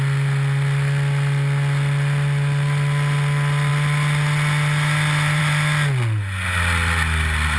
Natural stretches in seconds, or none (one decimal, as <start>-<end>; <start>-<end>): 0.0-7.6